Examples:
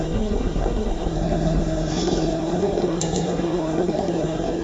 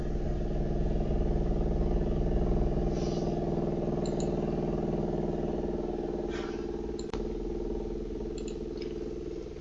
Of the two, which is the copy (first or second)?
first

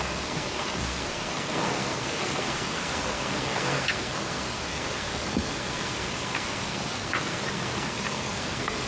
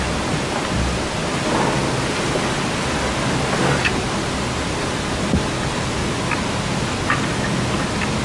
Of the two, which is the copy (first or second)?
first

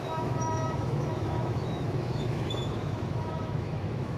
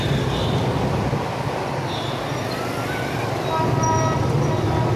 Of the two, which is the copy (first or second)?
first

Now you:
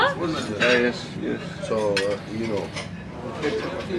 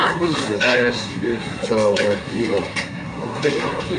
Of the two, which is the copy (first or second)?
second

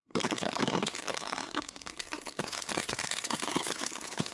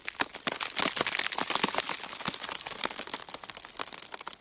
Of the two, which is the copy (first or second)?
first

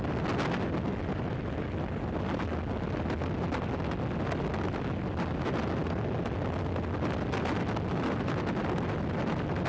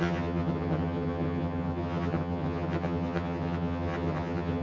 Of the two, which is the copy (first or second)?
second